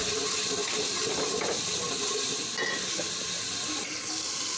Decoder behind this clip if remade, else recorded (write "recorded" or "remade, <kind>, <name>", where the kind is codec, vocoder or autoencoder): recorded